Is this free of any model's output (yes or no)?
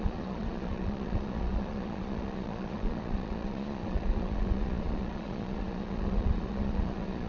no